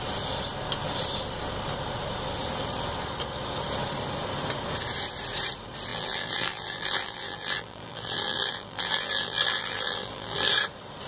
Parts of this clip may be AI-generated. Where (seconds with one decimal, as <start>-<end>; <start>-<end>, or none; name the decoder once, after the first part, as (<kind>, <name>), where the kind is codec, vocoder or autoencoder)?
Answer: 5.9-10.5 (vocoder, BigVGAN v2)